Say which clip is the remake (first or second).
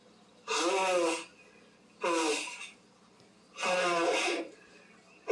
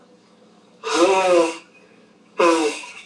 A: second